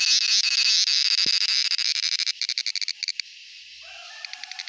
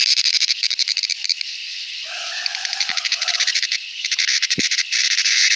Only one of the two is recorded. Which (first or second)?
first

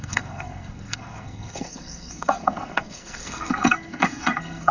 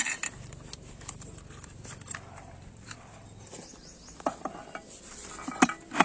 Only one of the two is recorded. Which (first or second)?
second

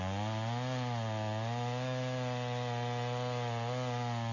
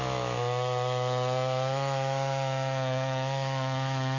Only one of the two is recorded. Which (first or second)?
first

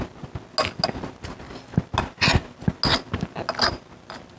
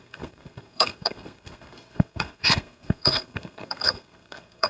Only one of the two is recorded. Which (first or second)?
first